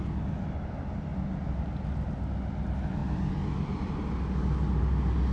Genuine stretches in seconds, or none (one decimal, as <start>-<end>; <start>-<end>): 0.0-5.3